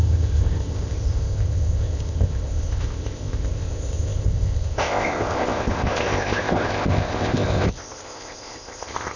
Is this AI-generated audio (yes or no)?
yes